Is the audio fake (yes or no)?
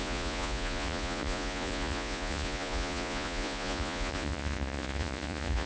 yes